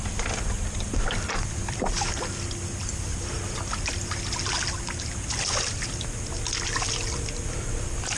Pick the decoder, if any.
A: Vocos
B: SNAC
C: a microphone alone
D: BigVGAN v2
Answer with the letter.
C